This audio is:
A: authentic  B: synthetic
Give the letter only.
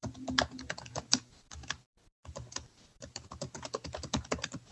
B